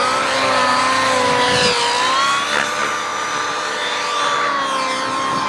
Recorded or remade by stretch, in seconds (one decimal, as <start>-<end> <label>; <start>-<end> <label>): 0.0-3.1 recorded; 3.1-4.2 remade; 4.2-5.5 recorded